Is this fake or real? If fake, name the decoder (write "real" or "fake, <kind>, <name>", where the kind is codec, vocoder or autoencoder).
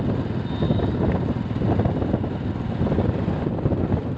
real